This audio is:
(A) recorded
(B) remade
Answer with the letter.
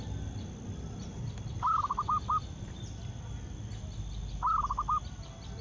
A